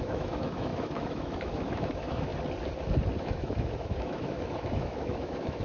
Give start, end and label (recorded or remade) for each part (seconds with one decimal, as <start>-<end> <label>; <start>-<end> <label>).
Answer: 0.0-2.3 remade; 2.3-3.2 recorded; 3.2-5.6 remade